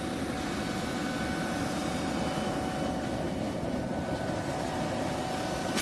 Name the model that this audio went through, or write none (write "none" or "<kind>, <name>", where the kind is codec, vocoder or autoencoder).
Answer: none